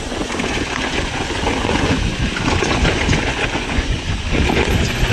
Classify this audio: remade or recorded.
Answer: remade